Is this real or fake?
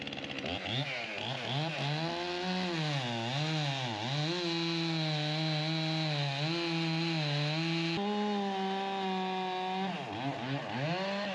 real